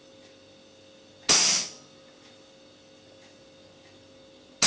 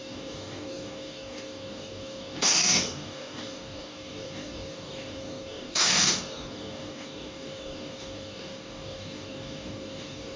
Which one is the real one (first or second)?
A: first